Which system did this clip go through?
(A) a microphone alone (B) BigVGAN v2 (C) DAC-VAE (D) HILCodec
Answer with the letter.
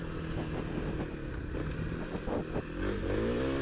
A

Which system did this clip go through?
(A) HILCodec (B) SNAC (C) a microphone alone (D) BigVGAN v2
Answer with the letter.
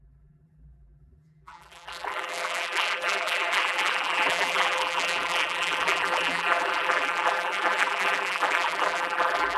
D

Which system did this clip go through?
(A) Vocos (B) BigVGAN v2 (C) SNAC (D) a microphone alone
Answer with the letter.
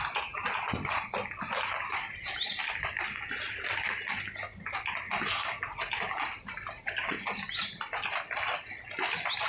D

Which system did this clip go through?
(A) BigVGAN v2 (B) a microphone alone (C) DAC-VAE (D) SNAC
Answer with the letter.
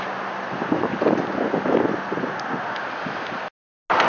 B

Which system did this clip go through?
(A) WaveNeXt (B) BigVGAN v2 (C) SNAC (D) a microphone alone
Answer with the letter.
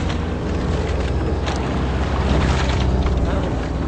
D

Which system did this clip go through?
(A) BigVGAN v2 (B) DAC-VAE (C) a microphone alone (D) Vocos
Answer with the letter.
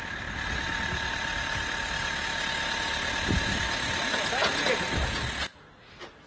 C